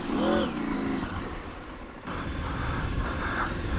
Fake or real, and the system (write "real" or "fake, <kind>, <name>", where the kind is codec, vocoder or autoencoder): real